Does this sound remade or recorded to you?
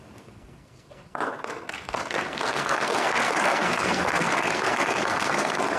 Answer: remade